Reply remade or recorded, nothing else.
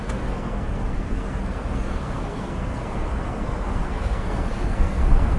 remade